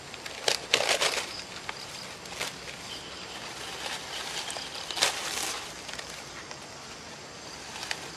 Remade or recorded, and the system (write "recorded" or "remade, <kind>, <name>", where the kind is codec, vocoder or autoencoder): recorded